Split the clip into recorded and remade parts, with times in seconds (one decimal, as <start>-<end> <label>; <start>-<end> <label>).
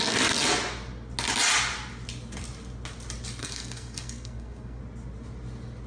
0.0-3.4 recorded; 3.4-4.8 remade; 4.8-5.9 recorded